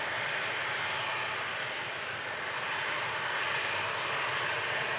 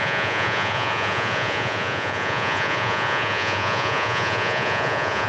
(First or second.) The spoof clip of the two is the second